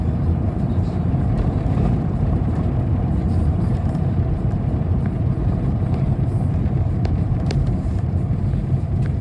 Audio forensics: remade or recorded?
remade